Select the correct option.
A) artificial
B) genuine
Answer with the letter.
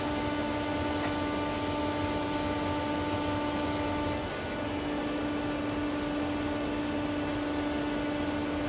B